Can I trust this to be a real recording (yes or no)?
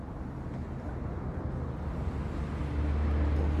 yes